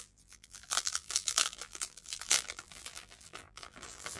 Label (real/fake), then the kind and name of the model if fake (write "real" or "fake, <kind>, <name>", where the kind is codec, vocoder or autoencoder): fake, vocoder, BigVGAN v2